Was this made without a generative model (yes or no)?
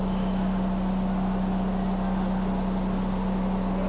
yes